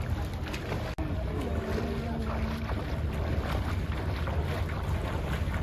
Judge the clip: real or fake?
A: real